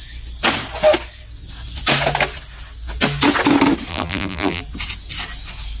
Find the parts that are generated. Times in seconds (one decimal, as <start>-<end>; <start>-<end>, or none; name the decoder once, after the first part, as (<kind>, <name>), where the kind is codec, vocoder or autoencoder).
3.9-4.6 (vocoder, BigVGAN v2)